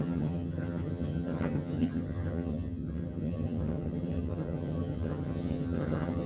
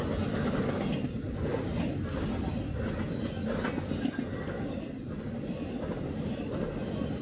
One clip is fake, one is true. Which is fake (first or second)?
first